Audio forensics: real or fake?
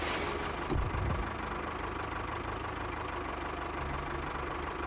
real